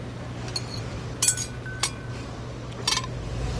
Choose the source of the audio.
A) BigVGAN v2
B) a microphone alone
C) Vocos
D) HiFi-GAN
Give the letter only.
B